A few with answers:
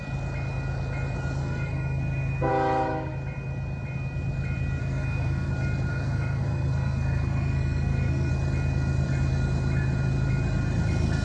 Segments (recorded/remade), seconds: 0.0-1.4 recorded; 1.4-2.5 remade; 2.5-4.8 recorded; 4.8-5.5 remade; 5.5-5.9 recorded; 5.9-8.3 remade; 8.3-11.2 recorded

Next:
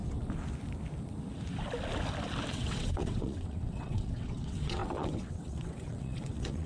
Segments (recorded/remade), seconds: 0.0-2.5 recorded; 2.5-6.7 remade